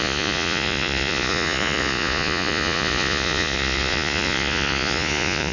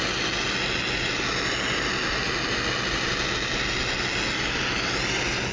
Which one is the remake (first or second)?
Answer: first